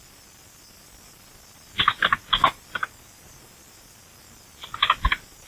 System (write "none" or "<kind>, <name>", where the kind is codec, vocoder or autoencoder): none